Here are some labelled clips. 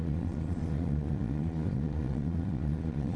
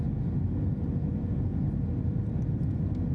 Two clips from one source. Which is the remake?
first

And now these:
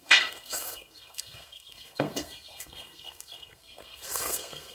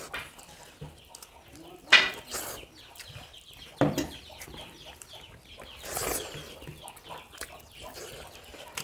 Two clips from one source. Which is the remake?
first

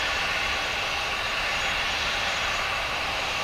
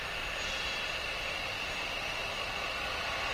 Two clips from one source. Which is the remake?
first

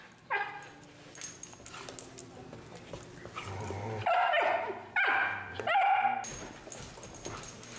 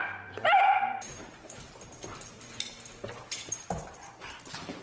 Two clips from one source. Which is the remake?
second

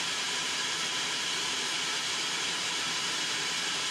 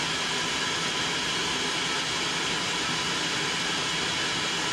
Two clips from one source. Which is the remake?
first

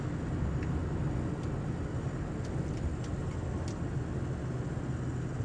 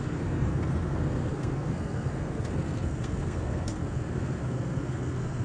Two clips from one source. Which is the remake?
second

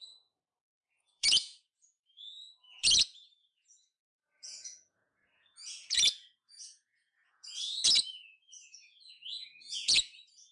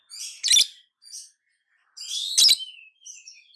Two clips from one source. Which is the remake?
first